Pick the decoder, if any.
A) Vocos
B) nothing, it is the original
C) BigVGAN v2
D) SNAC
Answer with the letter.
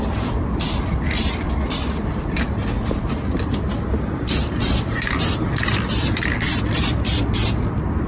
C